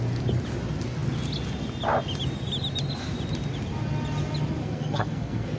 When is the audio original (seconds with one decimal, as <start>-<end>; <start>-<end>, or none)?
0.0-4.6